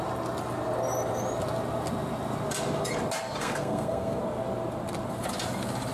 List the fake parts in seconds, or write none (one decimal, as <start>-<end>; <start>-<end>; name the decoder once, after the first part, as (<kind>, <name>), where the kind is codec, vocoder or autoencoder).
3.4-4.2 (codec, SNAC)